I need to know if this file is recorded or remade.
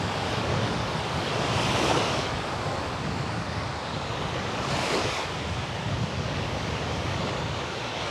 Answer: remade